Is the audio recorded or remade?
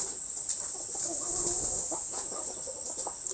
remade